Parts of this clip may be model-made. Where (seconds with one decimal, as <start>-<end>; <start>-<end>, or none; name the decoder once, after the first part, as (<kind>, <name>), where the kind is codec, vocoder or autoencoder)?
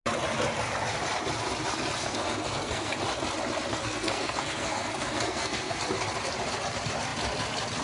2.0-2.9 (codec, SNAC); 3.7-5.8